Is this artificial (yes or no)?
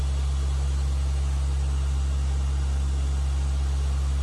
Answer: no